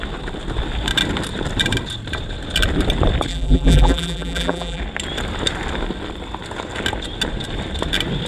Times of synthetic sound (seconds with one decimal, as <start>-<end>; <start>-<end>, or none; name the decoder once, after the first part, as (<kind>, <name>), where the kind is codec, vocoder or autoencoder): 3.3-4.8 (vocoder, BigVGAN v2)